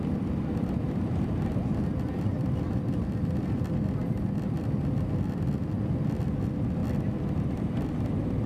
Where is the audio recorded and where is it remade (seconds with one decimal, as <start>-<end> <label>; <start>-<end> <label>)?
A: 0.0-8.5 remade